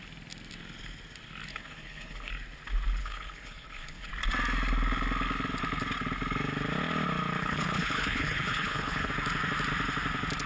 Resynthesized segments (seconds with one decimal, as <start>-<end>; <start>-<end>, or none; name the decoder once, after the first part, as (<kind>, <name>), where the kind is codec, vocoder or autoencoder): 1.5-2.3 (codec, HILCodec); 3.0-4.1; 7.4-9.1